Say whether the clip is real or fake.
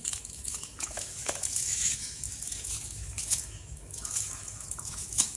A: fake